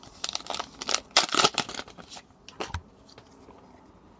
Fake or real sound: real